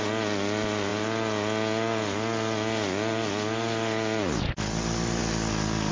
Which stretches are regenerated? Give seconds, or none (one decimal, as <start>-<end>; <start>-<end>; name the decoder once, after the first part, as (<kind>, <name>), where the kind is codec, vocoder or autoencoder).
none